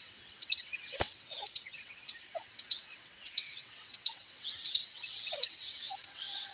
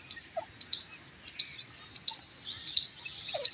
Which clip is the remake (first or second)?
first